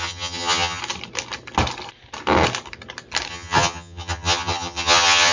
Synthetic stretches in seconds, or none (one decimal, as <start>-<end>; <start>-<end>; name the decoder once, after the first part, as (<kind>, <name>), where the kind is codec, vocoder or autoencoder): 0.0-0.8 (vocoder, HiFi-GAN); 3.3-5.3